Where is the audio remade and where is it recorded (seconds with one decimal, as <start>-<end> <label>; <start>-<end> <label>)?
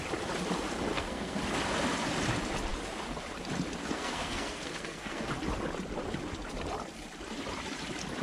0.0-0.9 recorded; 0.9-1.4 remade; 1.4-3.8 recorded; 3.8-5.3 remade; 5.3-8.2 recorded